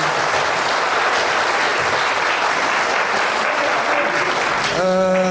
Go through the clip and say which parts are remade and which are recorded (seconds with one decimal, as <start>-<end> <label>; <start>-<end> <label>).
0.0-5.3 recorded